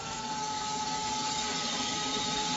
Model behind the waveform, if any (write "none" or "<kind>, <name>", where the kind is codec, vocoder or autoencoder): codec, DAC